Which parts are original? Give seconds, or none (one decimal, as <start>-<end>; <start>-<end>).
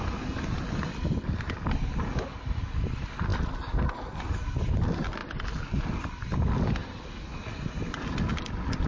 0.0-8.9